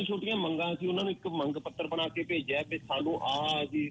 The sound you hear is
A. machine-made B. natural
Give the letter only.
B